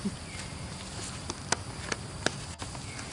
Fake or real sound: real